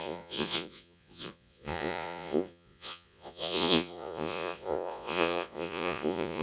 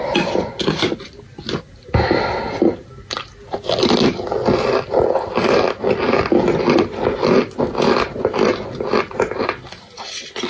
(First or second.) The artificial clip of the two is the first